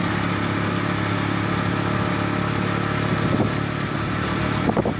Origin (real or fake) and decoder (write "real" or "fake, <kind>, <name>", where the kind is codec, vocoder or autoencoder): real